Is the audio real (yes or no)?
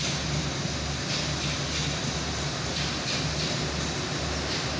yes